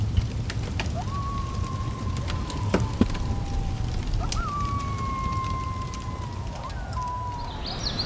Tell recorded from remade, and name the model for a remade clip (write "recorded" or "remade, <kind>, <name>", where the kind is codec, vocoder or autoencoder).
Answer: recorded